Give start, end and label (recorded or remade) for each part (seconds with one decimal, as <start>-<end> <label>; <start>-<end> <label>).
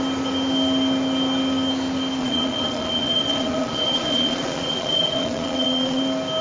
0.0-2.2 recorded; 2.2-6.0 remade; 6.0-6.4 recorded